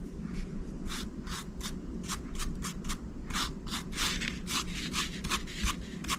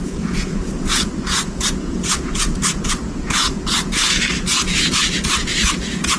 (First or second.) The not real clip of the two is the second